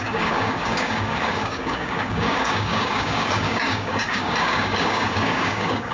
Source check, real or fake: fake